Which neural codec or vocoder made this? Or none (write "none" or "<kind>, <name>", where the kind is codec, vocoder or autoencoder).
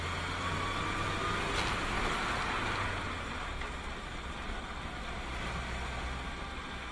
none